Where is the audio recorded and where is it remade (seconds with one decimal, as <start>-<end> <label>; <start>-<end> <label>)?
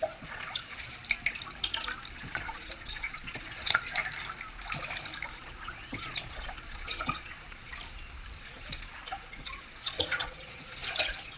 0.0-1.0 remade; 1.0-2.1 recorded; 2.1-4.0 remade; 4.0-5.3 recorded; 5.3-7.7 remade; 7.7-8.4 recorded; 8.4-11.4 remade